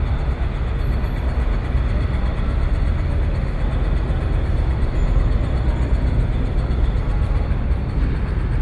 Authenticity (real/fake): real